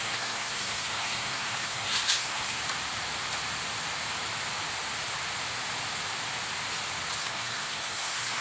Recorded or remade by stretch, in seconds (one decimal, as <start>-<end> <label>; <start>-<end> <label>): 0.0-2.6 remade; 2.6-7.2 recorded; 7.2-8.4 remade